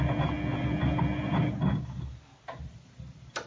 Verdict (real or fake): real